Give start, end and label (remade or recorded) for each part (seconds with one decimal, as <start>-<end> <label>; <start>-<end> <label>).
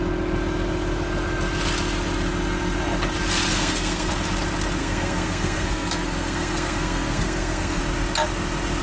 0.0-3.5 recorded; 3.5-4.1 remade; 4.1-4.8 recorded; 4.8-7.8 remade; 7.8-8.8 recorded